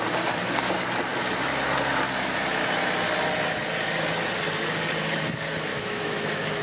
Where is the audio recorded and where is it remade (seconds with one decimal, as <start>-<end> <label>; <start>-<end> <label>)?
0.0-5.7 recorded; 5.7-6.6 remade